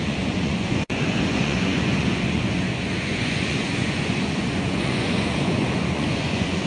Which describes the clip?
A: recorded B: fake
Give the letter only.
B